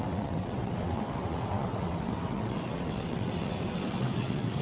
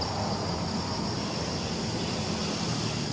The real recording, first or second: second